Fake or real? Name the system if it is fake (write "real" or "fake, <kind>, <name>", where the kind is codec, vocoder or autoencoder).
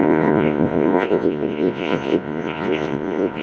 fake, vocoder, Vocos